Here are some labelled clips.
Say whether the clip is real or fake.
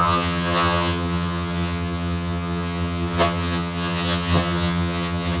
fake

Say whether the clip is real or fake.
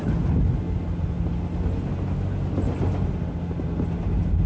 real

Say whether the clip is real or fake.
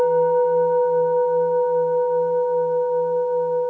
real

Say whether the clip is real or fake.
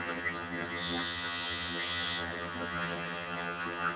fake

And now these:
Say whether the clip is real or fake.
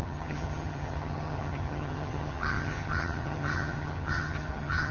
fake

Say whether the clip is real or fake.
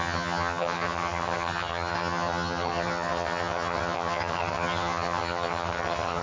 fake